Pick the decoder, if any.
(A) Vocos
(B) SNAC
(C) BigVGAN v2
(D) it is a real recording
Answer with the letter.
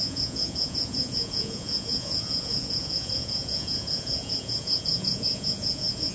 A